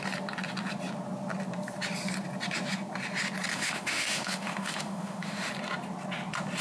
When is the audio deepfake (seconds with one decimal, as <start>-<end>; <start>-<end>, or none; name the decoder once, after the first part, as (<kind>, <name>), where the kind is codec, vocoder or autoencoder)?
3.5-5.5 (autoencoder, DAC-VAE)